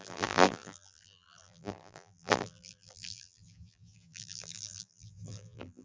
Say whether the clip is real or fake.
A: fake